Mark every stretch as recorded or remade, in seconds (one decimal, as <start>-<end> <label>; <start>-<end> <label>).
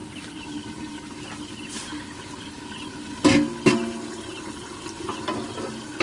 0.0-1.3 remade; 1.3-6.0 recorded